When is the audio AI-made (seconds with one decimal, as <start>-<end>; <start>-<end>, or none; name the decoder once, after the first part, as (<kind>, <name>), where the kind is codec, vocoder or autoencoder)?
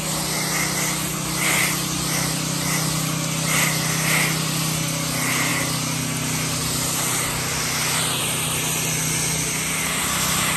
none